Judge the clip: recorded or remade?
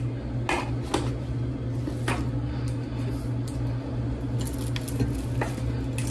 recorded